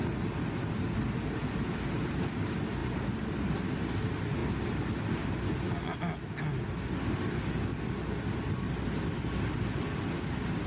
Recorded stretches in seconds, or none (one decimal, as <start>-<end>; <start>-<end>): 0.0-10.7

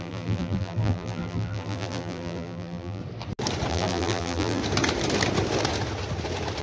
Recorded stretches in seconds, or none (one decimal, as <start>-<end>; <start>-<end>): 3.0-3.7; 4.6-6.6